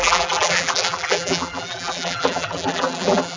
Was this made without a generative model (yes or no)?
no